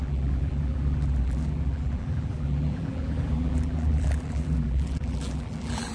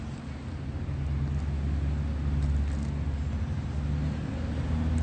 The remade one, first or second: first